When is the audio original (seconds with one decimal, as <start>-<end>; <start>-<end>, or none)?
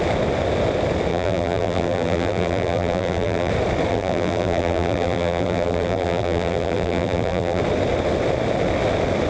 0.0-1.1; 3.5-3.9; 7.6-9.3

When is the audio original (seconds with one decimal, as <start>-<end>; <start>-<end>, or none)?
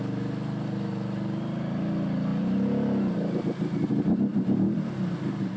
0.0-2.3; 3.9-4.3; 5.1-5.6